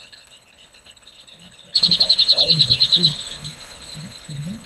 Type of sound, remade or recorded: remade